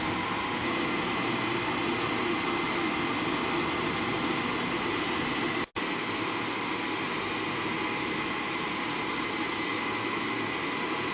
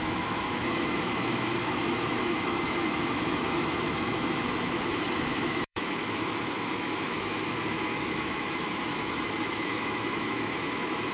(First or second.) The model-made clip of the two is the second